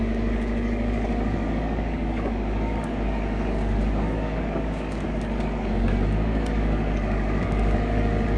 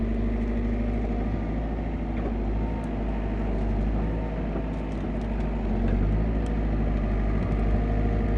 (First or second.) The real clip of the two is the second